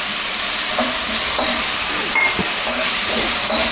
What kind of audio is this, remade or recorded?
remade